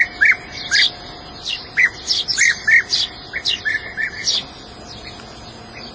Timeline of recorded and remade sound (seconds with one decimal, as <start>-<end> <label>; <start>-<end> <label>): 0.0-5.9 recorded